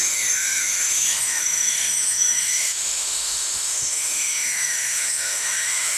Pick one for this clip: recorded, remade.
remade